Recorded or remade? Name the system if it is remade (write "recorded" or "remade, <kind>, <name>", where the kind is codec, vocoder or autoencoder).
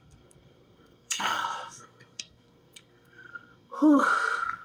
remade, codec, SNAC